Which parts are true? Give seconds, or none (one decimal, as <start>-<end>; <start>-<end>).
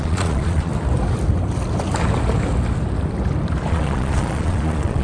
0.7-3.7